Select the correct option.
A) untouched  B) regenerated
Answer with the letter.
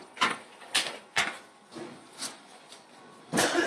B